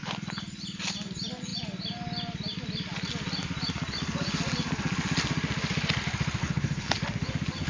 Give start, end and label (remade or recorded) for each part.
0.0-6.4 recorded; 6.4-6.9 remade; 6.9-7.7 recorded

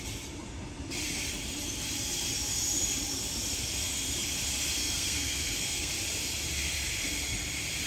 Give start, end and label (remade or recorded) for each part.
0.0-4.8 recorded; 4.8-5.9 remade; 5.9-7.9 recorded

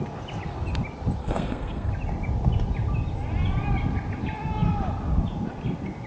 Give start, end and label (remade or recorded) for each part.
0.0-1.2 recorded; 1.2-1.9 remade; 1.9-6.1 recorded

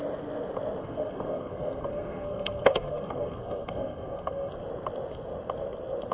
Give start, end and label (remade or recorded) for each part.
0.0-0.8 recorded; 0.8-4.5 remade; 4.5-6.1 recorded

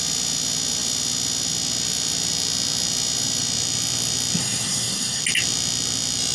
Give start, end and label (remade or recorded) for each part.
0.0-4.4 recorded; 4.4-5.2 remade; 5.2-6.3 recorded

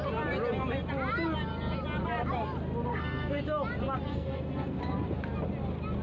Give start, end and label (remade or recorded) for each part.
0.0-2.9 recorded; 2.9-3.4 remade; 3.4-4.1 recorded; 4.1-4.8 remade; 4.8-6.0 recorded

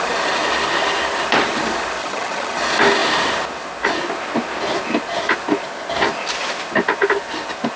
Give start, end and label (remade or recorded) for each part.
0.0-2.0 recorded; 2.0-2.6 remade; 2.6-7.8 recorded